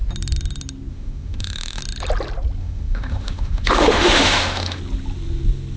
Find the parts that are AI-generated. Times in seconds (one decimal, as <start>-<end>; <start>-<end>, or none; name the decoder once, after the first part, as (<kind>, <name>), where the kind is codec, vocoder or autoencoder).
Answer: 0.9-1.8 (autoencoder, DAC-VAE); 2.6-4.8